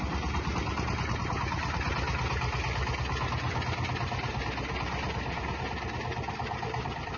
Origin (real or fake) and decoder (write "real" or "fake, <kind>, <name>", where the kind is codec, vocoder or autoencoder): real